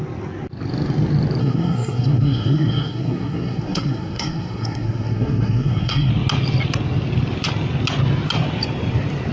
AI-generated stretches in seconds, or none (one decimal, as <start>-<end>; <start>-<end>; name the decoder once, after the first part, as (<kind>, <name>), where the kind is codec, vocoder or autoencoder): 1.4-6.1 (codec, SNAC)